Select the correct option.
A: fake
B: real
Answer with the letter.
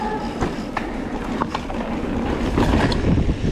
A